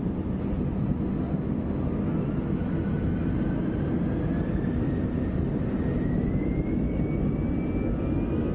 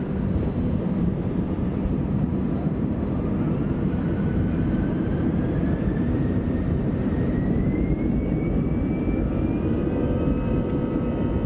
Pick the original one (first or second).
first